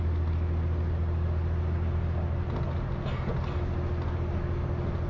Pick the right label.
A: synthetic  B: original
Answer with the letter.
B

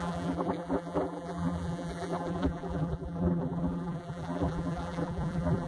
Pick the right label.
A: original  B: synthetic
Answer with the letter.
B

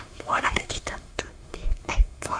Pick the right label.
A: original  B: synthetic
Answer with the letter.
B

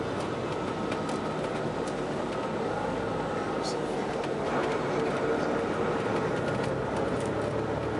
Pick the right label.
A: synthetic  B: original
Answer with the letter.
B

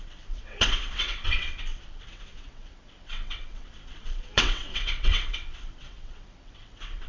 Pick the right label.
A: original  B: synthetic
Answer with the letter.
B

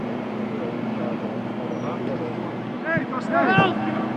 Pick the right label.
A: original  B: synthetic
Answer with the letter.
B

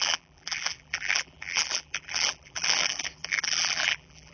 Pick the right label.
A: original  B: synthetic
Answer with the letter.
B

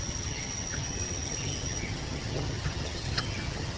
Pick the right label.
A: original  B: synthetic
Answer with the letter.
B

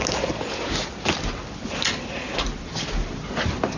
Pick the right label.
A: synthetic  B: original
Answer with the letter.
B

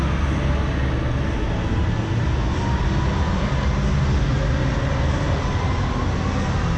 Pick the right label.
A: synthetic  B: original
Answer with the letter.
B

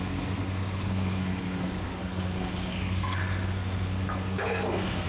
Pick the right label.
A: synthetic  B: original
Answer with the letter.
A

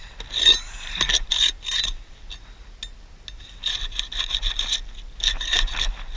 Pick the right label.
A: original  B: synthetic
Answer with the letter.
A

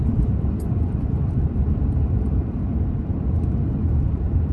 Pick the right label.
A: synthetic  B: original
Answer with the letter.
A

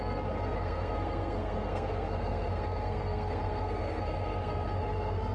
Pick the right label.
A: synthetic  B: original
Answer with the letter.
A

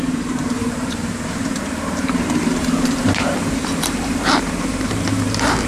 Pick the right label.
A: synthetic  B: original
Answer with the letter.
A